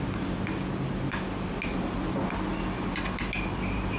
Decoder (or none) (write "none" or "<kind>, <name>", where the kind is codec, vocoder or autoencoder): none